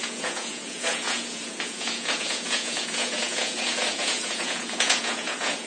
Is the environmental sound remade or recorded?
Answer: remade